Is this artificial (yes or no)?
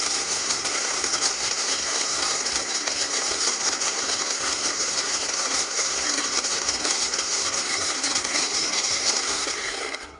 yes